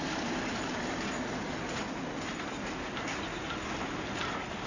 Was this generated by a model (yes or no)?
no